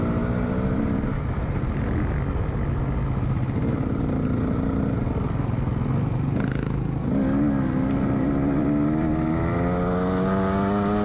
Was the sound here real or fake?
real